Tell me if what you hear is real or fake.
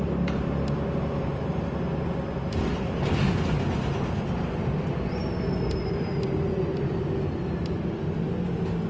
real